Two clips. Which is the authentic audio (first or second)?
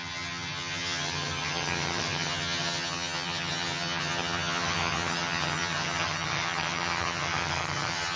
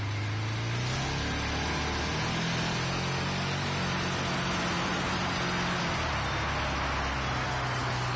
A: second